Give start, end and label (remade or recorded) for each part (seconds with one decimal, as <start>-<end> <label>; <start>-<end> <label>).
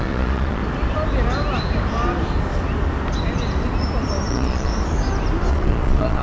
0.0-0.6 remade; 0.6-4.3 recorded; 4.3-4.7 remade; 4.7-5.5 recorded; 5.5-6.2 remade